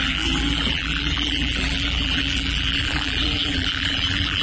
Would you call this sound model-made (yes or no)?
yes